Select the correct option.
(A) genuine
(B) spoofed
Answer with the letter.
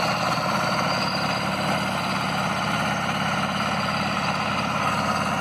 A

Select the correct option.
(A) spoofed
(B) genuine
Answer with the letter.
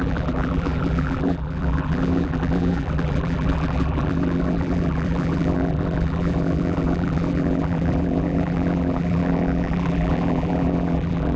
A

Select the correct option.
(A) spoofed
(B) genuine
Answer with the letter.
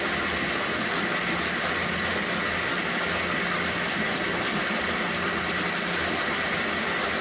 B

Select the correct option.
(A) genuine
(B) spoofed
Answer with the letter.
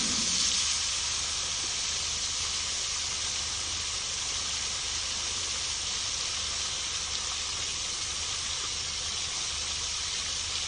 A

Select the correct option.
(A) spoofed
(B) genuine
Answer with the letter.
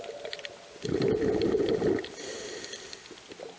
B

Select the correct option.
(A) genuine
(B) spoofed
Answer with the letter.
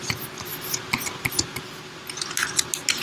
A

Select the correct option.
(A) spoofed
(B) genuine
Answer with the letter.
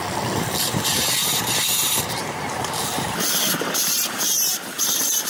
A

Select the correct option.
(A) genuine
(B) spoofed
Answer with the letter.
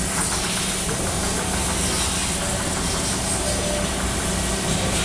A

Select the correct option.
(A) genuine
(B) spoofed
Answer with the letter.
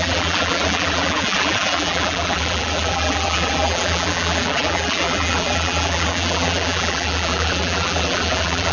B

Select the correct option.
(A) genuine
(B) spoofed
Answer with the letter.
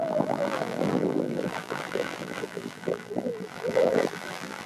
B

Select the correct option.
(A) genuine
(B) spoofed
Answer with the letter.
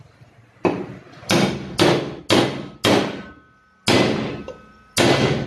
A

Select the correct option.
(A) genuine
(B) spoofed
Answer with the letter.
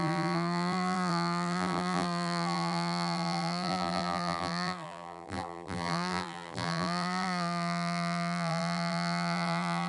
B